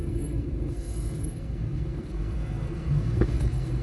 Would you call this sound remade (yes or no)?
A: yes